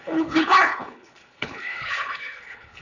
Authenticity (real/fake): fake